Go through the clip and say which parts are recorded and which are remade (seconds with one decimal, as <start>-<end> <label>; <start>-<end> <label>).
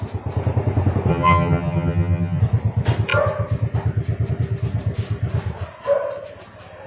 0.0-1.1 recorded; 1.1-2.4 remade; 2.4-6.9 recorded